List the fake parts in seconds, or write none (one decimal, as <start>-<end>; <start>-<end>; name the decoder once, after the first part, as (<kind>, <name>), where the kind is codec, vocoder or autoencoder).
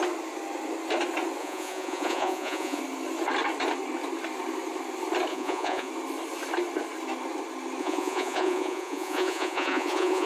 1.4-2.8 (vocoder, Vocos); 5.3-5.9; 7.8-10.3